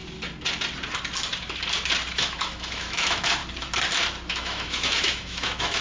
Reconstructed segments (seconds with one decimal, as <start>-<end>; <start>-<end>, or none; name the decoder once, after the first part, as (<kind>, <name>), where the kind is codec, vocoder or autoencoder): 2.1-3.4 (autoencoder, DAC-VAE); 4.3-5.8